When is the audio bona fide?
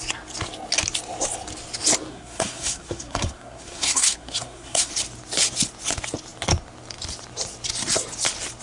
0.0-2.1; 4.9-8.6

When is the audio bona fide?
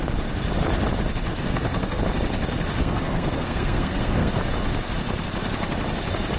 0.0-1.3; 2.0-2.8; 4.3-6.4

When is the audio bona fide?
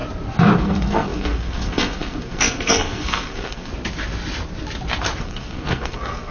0.0-0.6; 3.7-5.2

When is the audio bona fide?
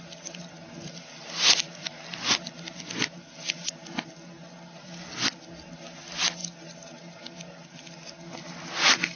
0.0-9.2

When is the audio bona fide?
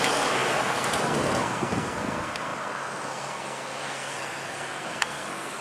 none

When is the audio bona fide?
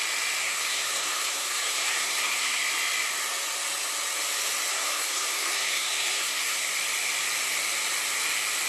0.0-0.4; 2.6-4.7; 6.7-8.7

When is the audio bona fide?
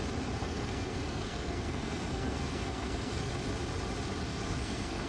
0.0-0.4; 3.3-4.3